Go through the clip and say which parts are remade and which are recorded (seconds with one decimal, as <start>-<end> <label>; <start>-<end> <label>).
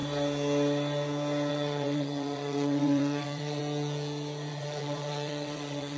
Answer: 0.0-1.5 recorded; 1.5-3.6 remade; 3.6-4.5 recorded; 4.5-6.0 remade